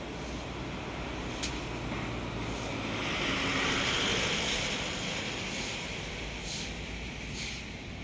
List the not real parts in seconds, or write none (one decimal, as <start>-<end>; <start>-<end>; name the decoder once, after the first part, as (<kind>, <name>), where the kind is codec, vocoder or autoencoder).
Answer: none